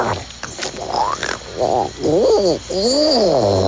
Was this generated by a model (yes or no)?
no